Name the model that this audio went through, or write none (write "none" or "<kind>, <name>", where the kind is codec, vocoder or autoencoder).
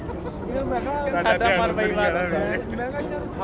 none